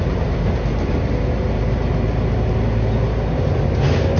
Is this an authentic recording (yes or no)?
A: yes